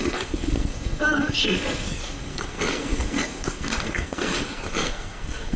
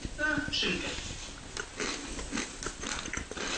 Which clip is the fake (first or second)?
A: first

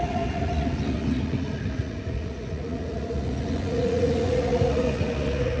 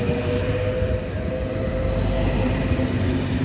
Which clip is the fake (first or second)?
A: first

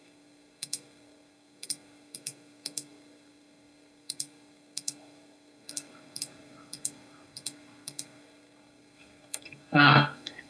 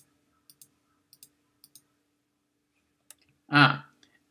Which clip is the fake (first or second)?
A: first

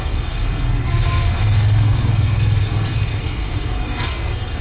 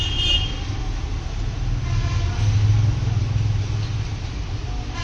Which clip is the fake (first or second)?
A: first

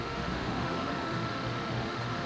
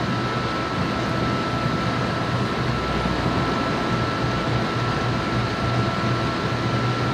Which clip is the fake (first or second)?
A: first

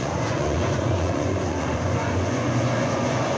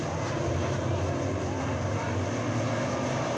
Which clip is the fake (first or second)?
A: first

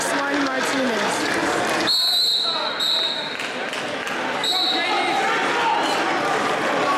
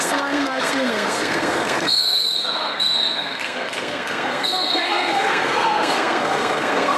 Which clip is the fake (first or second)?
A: second